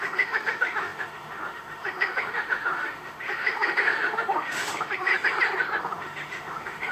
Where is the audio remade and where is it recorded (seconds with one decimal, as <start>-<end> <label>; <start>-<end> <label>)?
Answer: 0.0-5.1 remade; 5.1-5.8 recorded; 5.8-6.9 remade